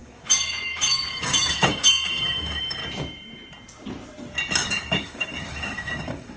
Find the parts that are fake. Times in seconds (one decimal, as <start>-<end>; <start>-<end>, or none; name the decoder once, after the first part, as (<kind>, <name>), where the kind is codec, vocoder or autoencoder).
0.0-2.8 (codec, DAC); 4.7-6.4